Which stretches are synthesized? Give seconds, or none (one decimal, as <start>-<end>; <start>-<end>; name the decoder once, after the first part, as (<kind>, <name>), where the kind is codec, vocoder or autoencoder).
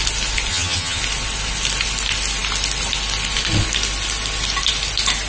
0.5-1.0 (vocoder, HiFi-GAN)